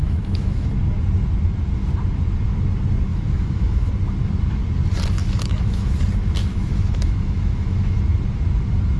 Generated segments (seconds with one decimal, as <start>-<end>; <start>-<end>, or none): 0.0-0.7; 3.1-3.9; 5.2-6.0; 6.5-8.0